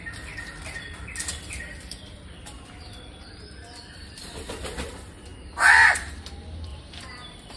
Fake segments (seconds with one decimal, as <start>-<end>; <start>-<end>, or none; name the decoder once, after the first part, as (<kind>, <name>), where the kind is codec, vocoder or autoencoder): 5.3-6.1 (vocoder, BigVGAN v2); 6.7-7.6